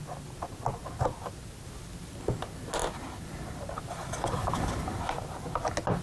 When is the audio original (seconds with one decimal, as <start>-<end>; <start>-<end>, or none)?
0.0-6.0